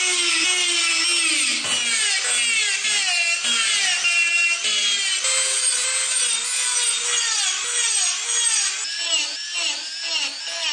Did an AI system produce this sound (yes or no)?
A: no